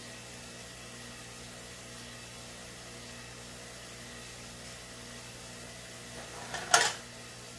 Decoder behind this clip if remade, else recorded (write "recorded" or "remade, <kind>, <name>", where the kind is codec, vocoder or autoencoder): recorded